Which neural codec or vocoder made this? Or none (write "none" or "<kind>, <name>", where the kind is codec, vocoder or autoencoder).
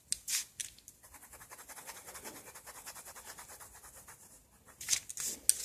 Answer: none